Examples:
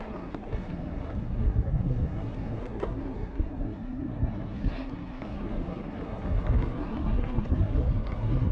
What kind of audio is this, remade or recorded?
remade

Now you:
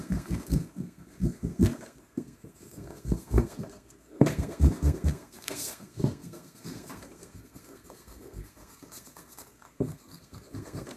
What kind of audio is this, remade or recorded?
remade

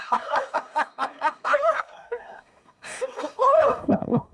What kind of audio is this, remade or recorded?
remade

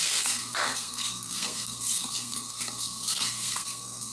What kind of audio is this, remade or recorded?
remade